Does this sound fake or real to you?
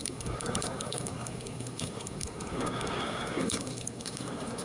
fake